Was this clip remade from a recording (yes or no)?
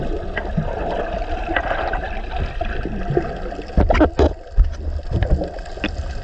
no